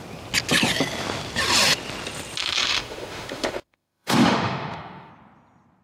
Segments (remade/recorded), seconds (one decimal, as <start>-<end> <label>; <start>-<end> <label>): 0.0-2.4 recorded; 2.4-5.1 remade; 5.1-5.8 recorded